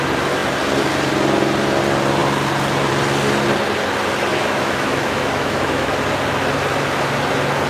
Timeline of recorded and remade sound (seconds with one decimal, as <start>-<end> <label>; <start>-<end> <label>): 0.0-4.3 recorded; 4.3-5.9 remade; 5.9-7.7 recorded

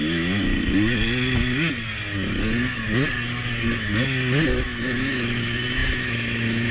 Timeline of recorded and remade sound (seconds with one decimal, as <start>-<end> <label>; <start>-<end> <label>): 0.0-0.5 remade; 0.5-4.5 recorded; 4.5-6.7 remade

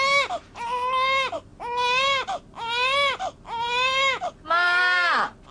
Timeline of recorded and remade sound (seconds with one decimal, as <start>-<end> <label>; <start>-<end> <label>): 0.0-5.5 recorded

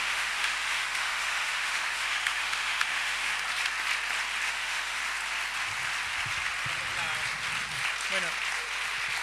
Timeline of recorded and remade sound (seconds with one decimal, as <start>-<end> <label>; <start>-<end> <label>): 0.0-3.3 remade; 3.3-4.5 recorded; 4.5-5.0 remade; 5.0-9.2 recorded

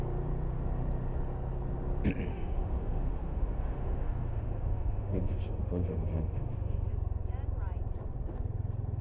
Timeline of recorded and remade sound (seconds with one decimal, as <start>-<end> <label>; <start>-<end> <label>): 0.0-2.3 recorded; 2.3-6.9 remade; 6.9-9.0 recorded

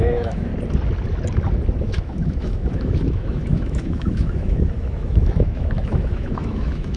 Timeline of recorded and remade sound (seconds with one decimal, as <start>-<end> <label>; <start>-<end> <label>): 0.0-0.5 remade; 0.5-1.8 recorded; 1.8-7.0 remade

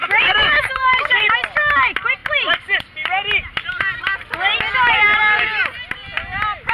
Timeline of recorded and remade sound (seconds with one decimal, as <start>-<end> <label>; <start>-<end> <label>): 0.0-1.3 remade; 1.3-6.7 recorded